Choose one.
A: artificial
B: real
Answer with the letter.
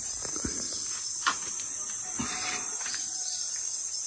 B